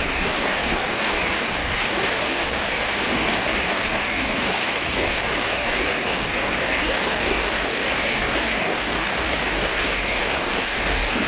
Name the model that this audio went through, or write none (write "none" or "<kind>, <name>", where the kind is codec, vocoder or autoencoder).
codec, DAC